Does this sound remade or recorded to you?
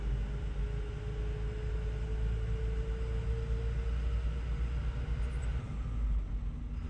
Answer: recorded